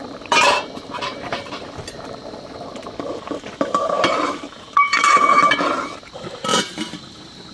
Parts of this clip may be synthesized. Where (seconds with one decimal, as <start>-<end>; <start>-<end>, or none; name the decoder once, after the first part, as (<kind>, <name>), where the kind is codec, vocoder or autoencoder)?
0.0-2.8 (vocoder, BigVGAN v2); 3.8-7.5